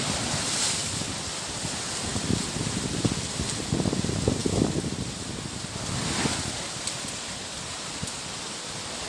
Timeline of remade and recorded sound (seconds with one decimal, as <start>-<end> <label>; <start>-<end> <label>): 0.0-9.1 recorded